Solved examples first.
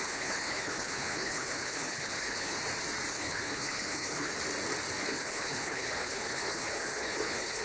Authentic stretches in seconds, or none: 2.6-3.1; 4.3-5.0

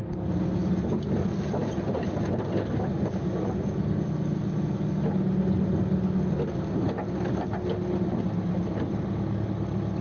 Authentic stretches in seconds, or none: 0.0-10.0

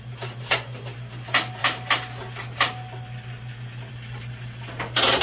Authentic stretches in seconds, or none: 0.0-5.2